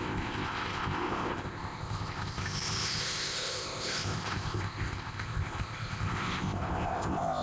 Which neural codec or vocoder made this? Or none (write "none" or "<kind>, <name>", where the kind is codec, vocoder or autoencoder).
codec, ZipCodec